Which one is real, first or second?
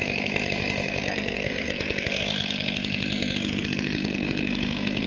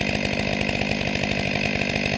second